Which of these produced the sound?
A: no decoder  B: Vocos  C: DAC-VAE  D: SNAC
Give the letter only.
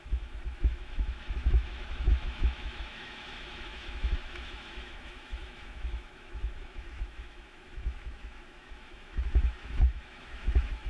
C